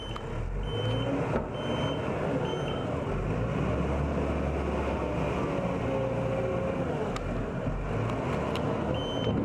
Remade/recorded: recorded